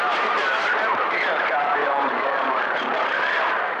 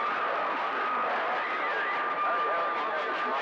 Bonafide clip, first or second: second